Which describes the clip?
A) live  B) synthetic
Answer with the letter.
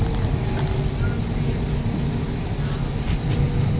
A